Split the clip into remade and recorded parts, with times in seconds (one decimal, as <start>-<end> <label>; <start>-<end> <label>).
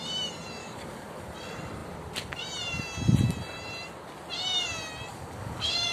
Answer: 0.0-0.6 recorded; 0.6-1.2 remade; 1.2-5.1 recorded; 5.1-5.9 remade